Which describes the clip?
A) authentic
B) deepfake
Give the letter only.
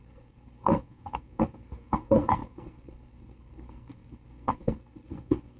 B